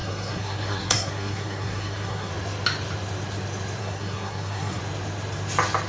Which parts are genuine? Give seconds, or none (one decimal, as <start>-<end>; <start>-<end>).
2.3-3.8; 4.8-5.9